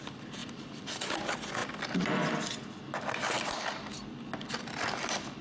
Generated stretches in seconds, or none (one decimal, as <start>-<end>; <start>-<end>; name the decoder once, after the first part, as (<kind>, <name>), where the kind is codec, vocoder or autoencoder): none